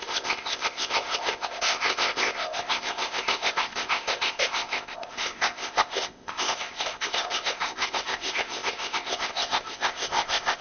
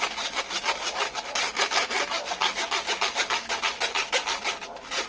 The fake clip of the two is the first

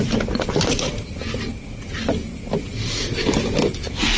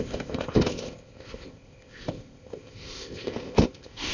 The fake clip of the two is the second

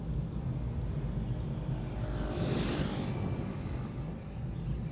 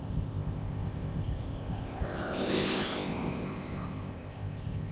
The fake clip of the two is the second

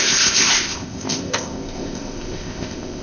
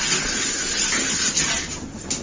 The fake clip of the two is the first